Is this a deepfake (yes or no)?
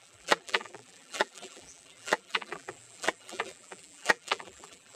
yes